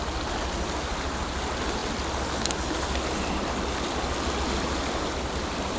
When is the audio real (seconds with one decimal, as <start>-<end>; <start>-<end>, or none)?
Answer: 0.0-5.8